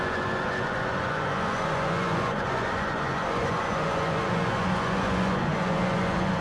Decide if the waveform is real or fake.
fake